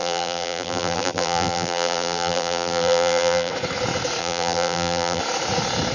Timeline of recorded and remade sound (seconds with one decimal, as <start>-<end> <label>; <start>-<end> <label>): 0.0-3.5 remade; 3.5-4.2 recorded; 4.2-5.2 remade; 5.2-5.9 recorded